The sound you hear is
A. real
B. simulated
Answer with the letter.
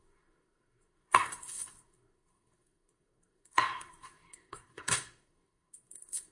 B